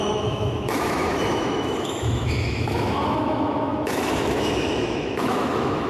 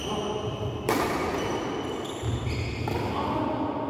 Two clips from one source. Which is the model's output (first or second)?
first